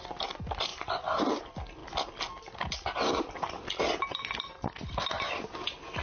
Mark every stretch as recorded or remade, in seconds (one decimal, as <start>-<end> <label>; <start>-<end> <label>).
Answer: 0.0-6.0 recorded

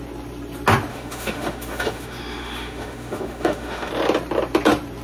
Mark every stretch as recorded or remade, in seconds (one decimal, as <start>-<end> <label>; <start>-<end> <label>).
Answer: 0.0-0.9 recorded; 0.9-3.9 remade; 3.9-5.0 recorded

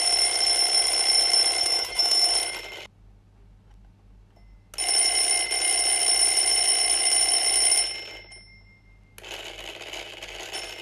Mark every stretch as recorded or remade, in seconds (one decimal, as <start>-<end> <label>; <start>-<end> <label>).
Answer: 0.0-1.6 recorded; 1.6-2.3 remade; 2.3-10.8 recorded

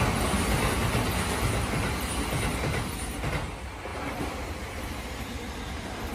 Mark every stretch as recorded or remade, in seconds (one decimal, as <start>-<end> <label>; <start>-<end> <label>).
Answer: 0.0-6.1 recorded

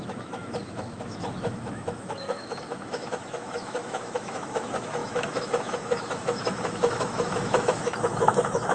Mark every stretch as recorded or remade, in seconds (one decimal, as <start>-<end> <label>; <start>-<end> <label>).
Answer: 0.0-8.7 remade

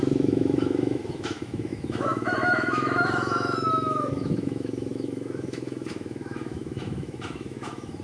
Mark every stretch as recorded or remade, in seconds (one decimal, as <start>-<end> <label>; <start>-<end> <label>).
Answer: 0.0-8.0 remade

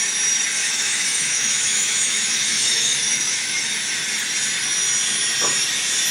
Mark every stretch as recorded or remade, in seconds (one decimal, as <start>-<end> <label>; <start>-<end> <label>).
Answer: 0.0-0.6 recorded; 0.6-3.7 remade; 3.7-6.1 recorded